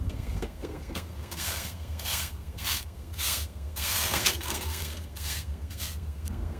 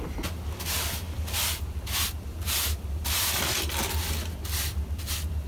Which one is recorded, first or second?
second